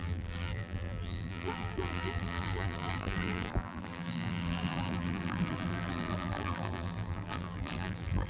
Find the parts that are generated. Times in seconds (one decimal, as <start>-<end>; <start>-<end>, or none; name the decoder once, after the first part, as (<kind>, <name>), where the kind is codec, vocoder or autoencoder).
0.0-8.3 (vocoder, BigVGAN v2)